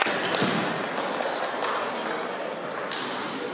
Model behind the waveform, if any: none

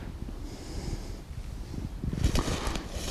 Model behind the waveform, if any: none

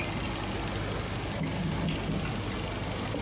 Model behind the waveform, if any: none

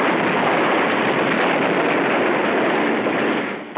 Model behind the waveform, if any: none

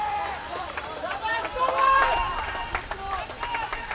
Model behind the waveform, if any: vocoder, BigVGAN v2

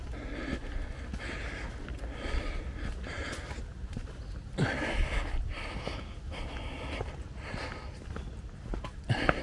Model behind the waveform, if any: none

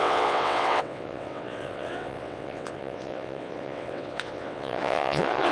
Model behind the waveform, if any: vocoder, WaveNeXt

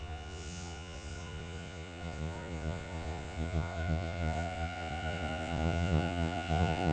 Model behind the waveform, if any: vocoder, Vocos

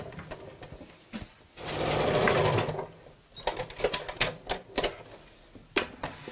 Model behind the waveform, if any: none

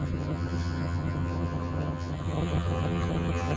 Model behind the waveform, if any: vocoder, HiFi-GAN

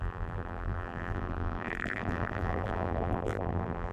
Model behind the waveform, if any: vocoder, BigVGAN v2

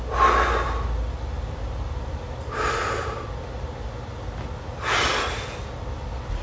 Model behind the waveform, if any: none